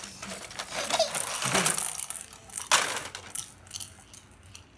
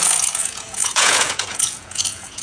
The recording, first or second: first